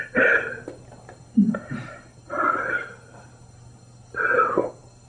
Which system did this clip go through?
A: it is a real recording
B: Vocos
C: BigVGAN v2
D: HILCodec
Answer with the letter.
A